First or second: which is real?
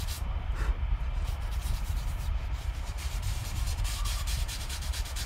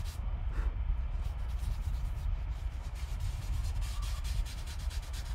second